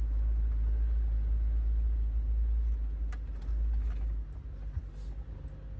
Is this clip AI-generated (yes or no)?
no